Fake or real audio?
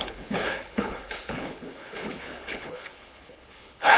fake